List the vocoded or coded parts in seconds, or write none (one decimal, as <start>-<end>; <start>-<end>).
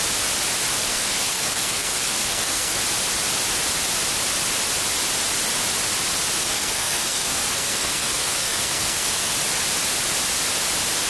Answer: 0.8-2.8; 6.4-9.3